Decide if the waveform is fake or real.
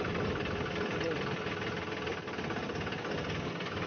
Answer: real